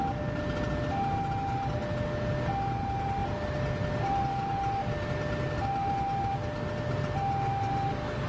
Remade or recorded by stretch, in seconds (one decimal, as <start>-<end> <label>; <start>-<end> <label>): 0.0-8.3 recorded

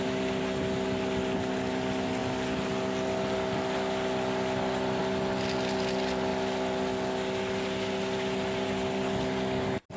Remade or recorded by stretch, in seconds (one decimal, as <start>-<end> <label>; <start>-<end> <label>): 0.0-10.0 recorded

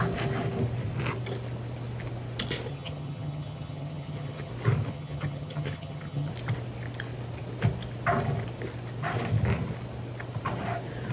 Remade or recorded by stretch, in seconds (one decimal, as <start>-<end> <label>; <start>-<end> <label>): 0.0-2.7 recorded; 2.7-4.5 remade; 4.5-4.9 recorded; 4.9-6.3 remade; 6.3-11.1 recorded

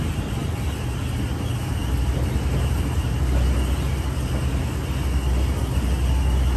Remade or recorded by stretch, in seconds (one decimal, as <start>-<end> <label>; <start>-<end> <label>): 0.0-6.6 recorded

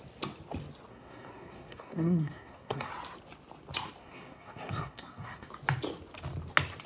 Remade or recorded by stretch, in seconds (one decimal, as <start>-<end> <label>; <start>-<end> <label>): 0.0-0.9 recorded; 0.9-2.9 remade; 2.9-4.0 recorded; 4.0-5.5 remade; 5.5-6.9 recorded

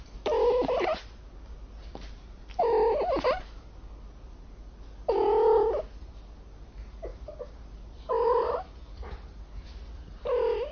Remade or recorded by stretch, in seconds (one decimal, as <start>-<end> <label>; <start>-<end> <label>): 0.0-10.7 recorded